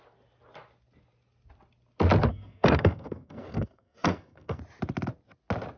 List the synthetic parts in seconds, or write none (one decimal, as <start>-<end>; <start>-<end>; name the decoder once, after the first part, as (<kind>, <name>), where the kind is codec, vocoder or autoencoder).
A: 2.3-4.6 (codec, SNAC)